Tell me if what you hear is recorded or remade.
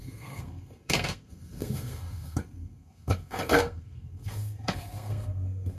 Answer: remade